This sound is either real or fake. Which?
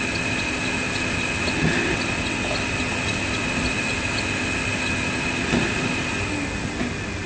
real